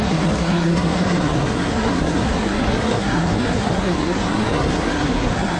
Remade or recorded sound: remade